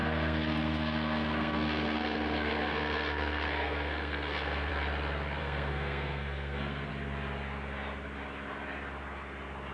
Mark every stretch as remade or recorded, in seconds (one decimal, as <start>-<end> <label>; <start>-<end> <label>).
0.0-4.7 remade; 4.7-5.4 recorded; 5.4-6.9 remade; 6.9-9.7 recorded